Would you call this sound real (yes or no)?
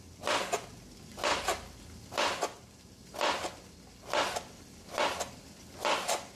yes